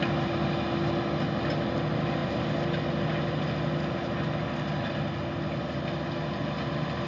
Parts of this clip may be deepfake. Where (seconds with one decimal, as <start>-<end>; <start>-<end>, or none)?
none